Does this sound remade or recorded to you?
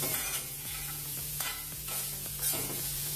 remade